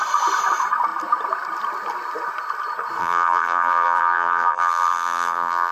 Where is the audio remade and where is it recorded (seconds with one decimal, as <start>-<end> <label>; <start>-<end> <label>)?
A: 0.0-3.0 recorded; 3.0-5.7 remade